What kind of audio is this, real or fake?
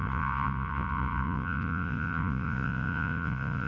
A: fake